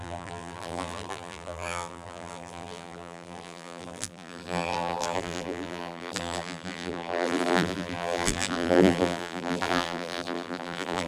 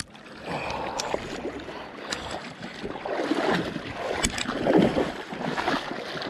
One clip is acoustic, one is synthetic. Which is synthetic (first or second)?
first